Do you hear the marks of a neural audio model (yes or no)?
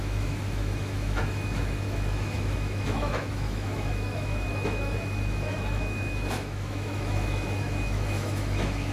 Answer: yes